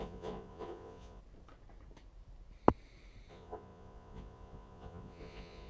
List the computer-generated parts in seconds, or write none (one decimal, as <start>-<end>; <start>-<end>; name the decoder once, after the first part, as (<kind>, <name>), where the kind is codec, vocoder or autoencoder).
0.0-1.2 (vocoder, Vocos); 3.3-5.7